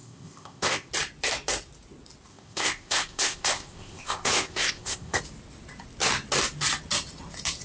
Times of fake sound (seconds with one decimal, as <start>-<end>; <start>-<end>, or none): 0.0-0.9; 2.3-5.2